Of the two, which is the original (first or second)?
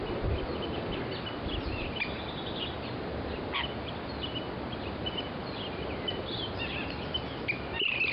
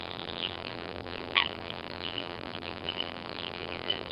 first